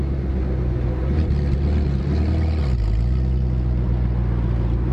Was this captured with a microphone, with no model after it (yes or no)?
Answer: yes